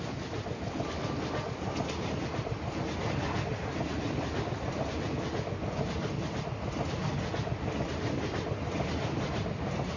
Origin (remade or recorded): recorded